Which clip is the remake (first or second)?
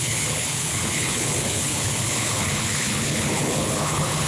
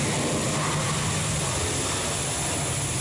first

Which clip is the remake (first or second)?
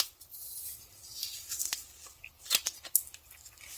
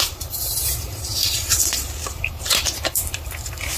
second